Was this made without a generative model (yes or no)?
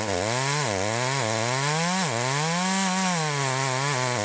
yes